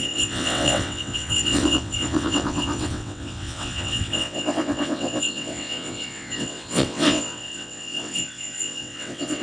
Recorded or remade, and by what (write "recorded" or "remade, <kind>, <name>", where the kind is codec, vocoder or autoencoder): remade, vocoder, WaveNeXt